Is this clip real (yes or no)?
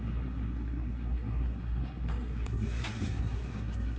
no